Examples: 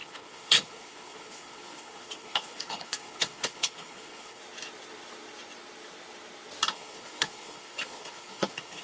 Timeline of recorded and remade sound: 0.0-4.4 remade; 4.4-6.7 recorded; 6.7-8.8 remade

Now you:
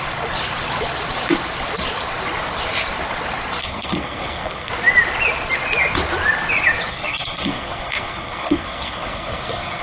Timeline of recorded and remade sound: 0.0-3.6 recorded; 3.6-4.7 remade; 4.7-6.9 recorded; 6.9-9.8 remade

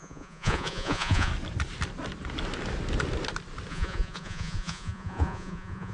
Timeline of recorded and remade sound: 0.0-1.3 remade; 1.3-3.7 recorded; 3.7-5.9 remade